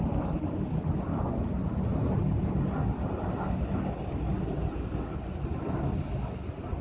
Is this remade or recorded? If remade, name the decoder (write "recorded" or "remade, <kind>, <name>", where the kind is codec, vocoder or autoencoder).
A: recorded